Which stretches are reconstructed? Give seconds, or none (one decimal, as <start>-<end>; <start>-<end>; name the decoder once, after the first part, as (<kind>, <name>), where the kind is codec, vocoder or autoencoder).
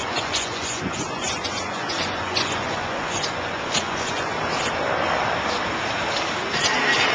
0.0-4.3 (vocoder, Vocos)